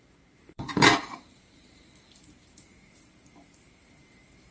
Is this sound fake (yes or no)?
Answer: yes